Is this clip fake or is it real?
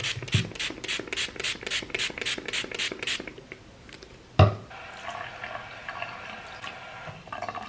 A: real